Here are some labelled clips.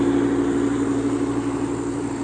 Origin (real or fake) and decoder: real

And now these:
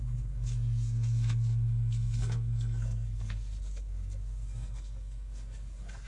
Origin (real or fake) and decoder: fake, codec, SNAC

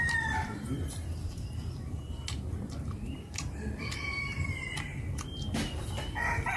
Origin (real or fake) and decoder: fake, vocoder, BigVGAN v2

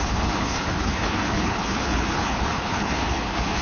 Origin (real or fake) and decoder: fake, codec, HILCodec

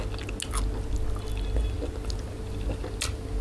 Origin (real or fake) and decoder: real